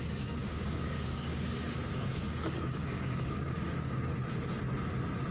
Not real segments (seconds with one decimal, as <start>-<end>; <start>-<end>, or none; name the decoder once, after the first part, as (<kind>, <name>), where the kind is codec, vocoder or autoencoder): 0.0-4.1 (codec, DAC)

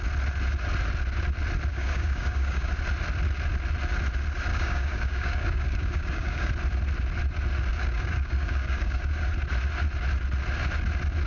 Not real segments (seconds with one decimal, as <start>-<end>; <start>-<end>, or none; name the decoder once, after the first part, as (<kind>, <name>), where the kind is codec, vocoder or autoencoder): 1.7-2.7 (codec, DAC); 4.5-6.5; 7.7-9.3

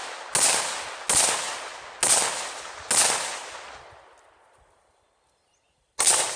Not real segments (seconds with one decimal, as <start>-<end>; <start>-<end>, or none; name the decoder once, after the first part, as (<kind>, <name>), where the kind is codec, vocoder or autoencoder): none

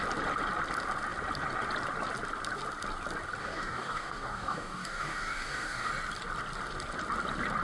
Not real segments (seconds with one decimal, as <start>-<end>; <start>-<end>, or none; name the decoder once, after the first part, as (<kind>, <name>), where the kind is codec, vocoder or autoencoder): 3.4-5.9 (codec, DAC)

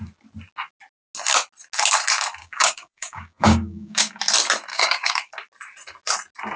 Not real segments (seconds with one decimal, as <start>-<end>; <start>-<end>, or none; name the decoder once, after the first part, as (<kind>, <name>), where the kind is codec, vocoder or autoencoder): 2.4-4.2 (codec, DAC); 4.7-5.3

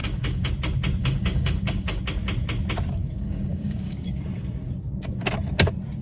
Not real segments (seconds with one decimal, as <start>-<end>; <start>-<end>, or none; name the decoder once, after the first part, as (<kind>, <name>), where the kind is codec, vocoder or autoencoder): 0.0-0.5 (codec, DAC); 1.0-2.0; 3.0-4.2